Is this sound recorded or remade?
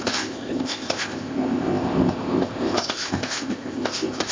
remade